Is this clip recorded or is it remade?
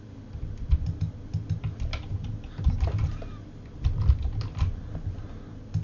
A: recorded